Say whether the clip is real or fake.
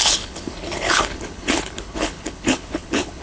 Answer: fake